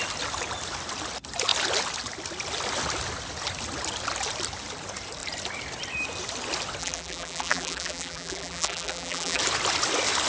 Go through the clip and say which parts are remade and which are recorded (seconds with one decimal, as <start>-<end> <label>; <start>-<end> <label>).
0.0-6.8 recorded; 6.8-9.4 remade; 9.4-10.3 recorded